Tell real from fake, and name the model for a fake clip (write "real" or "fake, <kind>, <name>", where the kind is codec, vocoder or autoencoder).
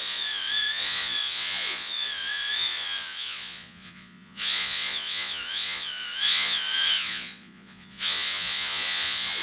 fake, vocoder, Vocos